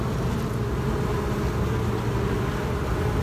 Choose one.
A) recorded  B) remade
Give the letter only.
A